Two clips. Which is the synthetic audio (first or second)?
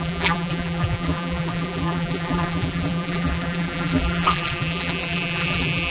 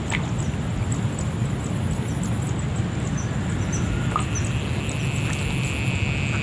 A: first